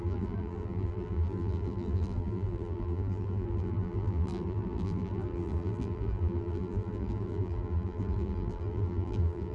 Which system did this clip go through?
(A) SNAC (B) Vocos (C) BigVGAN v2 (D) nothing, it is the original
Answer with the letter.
C